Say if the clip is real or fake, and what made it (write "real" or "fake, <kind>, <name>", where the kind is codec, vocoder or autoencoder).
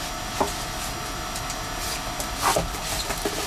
real